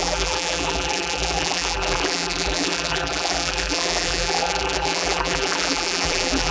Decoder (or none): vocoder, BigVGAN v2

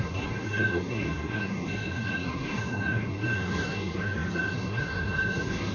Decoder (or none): codec, SNAC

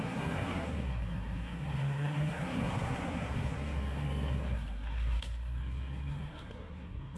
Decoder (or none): codec, SNAC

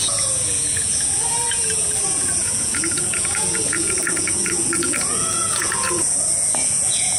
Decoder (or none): vocoder, Vocos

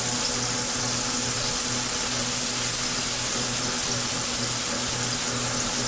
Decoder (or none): none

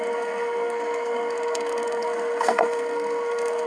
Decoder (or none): codec, SNAC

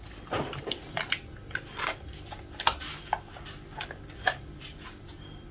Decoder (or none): none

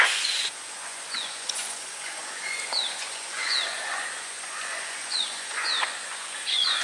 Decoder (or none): vocoder, Vocos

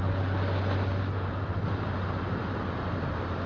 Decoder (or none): none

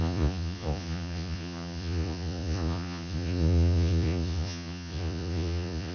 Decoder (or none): vocoder, Vocos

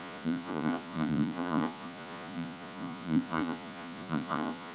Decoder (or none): vocoder, Vocos